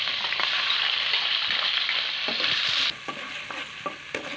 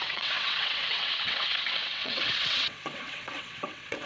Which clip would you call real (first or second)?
first